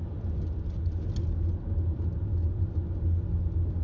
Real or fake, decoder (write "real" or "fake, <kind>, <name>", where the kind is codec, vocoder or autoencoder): real